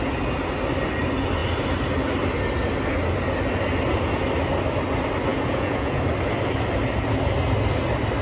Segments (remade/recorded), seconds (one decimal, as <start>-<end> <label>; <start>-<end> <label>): 0.0-5.3 recorded; 5.3-6.0 remade; 6.0-8.2 recorded